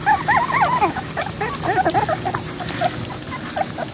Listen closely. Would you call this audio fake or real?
real